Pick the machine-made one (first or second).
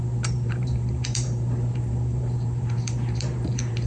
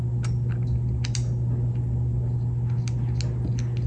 first